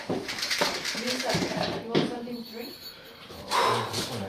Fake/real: fake